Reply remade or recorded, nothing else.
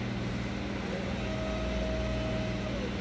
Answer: recorded